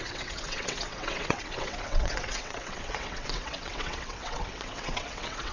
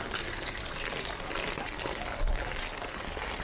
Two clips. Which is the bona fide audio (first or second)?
second